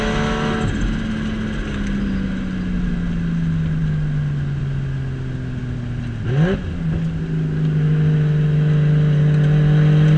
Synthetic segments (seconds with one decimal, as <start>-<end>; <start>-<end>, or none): none